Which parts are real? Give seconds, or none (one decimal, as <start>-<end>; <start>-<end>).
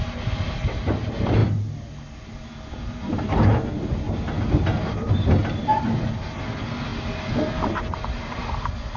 0.0-9.0